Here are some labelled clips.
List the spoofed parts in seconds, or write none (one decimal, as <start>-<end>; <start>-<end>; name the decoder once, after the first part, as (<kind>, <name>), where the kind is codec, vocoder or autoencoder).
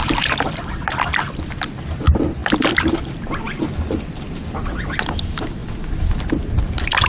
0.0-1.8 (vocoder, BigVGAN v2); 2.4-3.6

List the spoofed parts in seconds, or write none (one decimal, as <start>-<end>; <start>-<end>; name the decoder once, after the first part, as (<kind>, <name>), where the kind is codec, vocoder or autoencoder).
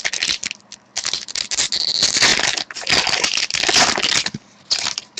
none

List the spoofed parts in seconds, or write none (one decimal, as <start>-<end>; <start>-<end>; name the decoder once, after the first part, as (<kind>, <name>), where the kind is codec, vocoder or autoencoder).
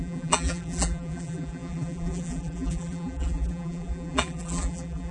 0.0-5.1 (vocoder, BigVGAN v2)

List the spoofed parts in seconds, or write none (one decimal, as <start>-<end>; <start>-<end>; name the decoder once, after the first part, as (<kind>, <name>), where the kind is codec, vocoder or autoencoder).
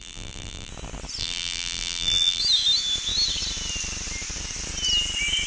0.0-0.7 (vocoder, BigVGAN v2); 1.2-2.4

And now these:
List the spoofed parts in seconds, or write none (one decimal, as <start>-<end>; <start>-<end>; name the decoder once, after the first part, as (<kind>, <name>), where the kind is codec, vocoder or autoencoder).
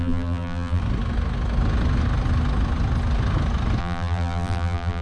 0.0-0.8 (vocoder, BigVGAN v2); 3.8-5.0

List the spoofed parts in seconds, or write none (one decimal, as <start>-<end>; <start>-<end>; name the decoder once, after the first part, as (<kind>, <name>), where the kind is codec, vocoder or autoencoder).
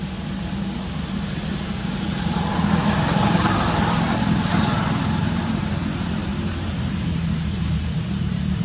2.8-5.6 (vocoder, BigVGAN v2); 6.3-8.6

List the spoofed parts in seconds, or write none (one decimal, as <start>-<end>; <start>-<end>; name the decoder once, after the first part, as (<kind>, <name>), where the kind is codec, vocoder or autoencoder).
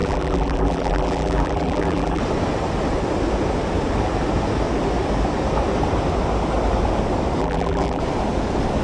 0.0-2.2 (vocoder, BigVGAN v2); 7.4-8.0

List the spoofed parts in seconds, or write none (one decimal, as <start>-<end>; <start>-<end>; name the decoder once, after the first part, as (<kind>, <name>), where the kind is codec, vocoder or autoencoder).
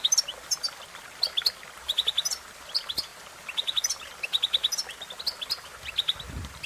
none